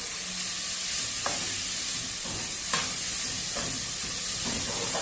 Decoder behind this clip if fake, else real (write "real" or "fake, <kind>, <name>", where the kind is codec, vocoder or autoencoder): real